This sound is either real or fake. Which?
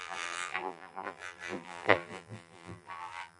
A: fake